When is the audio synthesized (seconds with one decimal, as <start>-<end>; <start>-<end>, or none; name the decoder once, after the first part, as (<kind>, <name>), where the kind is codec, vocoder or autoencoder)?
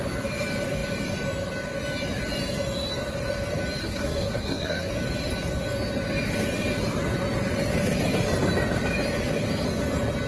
3.8-4.9 (codec, SNAC)